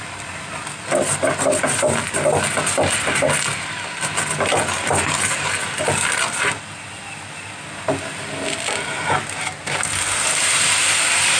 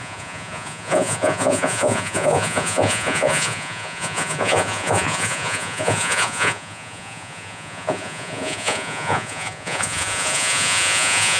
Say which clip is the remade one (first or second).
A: second